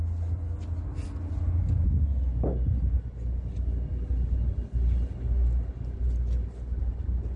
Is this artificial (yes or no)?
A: no